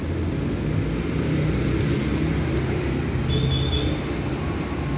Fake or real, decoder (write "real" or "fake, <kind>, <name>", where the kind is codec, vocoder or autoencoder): real